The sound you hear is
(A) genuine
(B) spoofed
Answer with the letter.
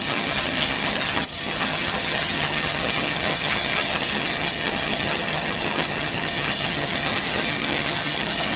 B